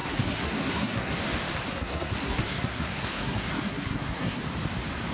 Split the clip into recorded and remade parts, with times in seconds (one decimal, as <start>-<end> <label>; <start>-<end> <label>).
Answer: 0.0-1.2 remade; 1.2-1.7 recorded; 1.7-4.4 remade; 4.4-5.1 recorded